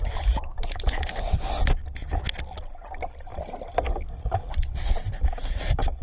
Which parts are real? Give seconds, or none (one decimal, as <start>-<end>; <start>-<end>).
0.0-6.0